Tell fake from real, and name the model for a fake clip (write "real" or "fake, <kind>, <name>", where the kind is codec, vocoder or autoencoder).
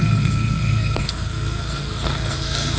fake, codec, SNAC